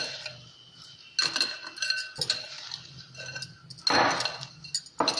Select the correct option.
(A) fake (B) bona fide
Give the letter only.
B